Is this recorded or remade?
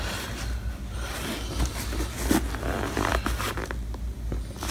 recorded